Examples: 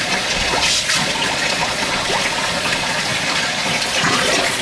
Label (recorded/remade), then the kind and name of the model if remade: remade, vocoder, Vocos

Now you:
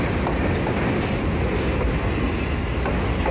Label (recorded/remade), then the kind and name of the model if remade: recorded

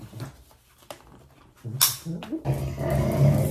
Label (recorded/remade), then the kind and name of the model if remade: recorded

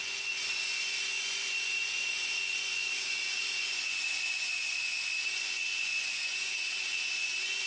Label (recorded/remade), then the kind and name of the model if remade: remade, vocoder, Vocos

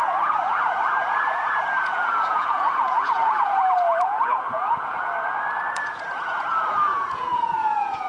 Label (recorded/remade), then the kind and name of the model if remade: remade, vocoder, Vocos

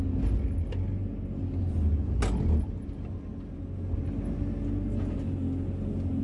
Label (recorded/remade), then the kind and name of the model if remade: recorded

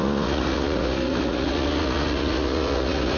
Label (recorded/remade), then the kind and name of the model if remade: remade, vocoder, Vocos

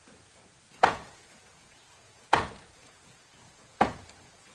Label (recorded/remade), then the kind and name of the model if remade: remade, vocoder, Vocos